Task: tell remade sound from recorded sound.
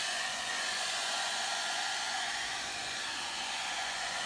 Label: remade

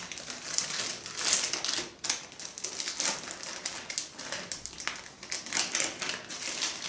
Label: recorded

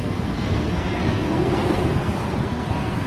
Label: remade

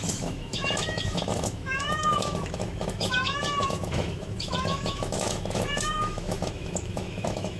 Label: remade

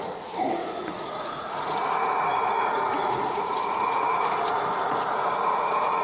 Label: remade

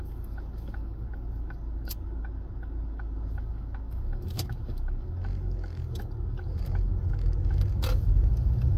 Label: remade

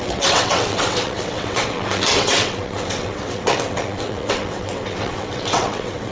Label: remade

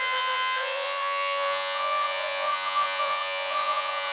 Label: remade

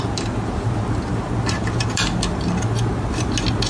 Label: recorded